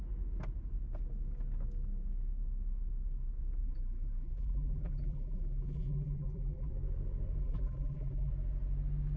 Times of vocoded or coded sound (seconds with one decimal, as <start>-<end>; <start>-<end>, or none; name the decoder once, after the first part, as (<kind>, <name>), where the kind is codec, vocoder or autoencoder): 3.6-6.7 (vocoder, BigVGAN v2); 7.4-8.3